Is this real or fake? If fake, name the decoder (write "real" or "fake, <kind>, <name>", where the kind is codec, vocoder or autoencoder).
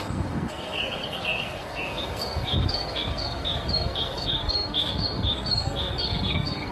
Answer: fake, codec, SNAC